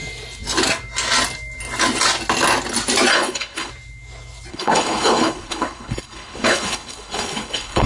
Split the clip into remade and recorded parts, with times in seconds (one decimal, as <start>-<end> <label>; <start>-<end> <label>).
0.0-3.1 recorded; 3.1-3.7 remade; 3.7-4.5 recorded; 4.5-7.9 remade